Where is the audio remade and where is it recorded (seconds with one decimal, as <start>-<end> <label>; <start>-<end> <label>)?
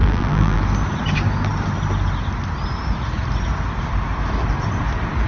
0.0-0.6 remade; 0.6-5.3 recorded